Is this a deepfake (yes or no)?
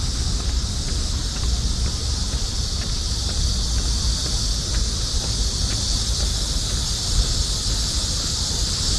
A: no